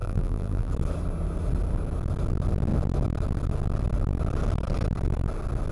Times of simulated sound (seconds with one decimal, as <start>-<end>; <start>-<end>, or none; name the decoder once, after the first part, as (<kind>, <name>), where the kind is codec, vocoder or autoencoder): 0.0-0.7 (vocoder, BigVGAN v2)

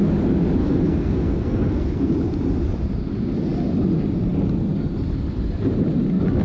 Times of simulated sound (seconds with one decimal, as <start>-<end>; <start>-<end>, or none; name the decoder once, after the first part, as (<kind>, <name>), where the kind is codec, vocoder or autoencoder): 0.6-2.1 (codec, SNAC)

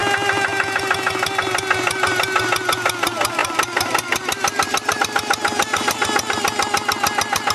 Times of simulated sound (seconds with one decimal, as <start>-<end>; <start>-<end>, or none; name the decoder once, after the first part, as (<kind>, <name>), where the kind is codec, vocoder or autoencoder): 3.4-5.0 (vocoder, BigVGAN v2)

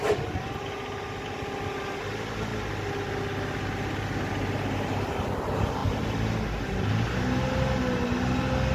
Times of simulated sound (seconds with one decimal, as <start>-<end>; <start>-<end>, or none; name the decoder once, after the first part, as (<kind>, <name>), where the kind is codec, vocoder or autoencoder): none

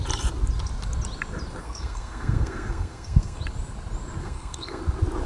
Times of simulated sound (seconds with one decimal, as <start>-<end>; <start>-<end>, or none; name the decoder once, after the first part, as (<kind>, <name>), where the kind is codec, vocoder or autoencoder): 1.6-3.4 (codec, SNAC); 4.2-4.8

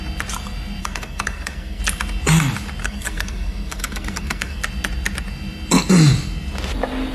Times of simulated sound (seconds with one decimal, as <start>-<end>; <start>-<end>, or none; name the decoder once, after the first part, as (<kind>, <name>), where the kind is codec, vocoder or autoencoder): 0.8-1.8 (codec, SNAC); 2.8-4.6

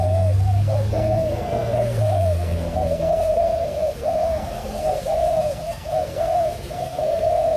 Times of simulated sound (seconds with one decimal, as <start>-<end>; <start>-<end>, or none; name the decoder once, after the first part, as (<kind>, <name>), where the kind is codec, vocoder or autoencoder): 0.0-7.6 (codec, SNAC)